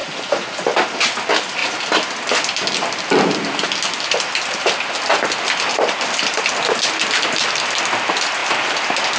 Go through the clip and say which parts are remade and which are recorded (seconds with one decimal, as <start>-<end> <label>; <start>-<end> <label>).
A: 0.0-9.2 recorded